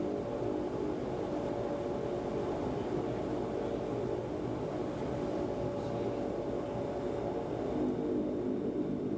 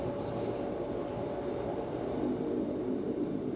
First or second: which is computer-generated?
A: second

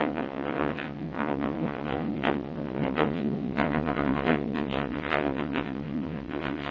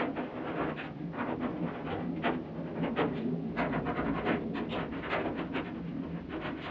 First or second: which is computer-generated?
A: first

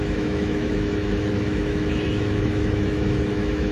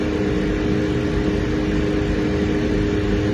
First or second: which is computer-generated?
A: first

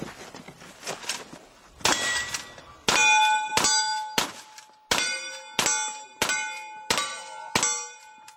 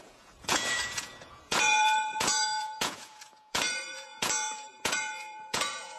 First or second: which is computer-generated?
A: second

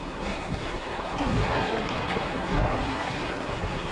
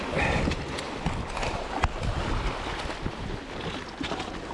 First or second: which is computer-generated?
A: first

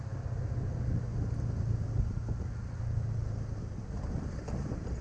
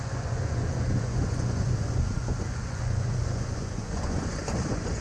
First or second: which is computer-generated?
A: second